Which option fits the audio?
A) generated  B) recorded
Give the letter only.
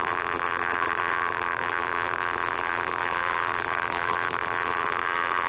A